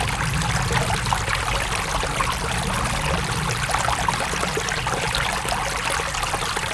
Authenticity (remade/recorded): recorded